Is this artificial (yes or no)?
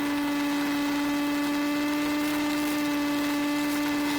no